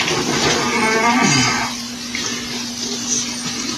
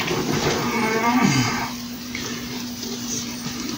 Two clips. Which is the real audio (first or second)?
first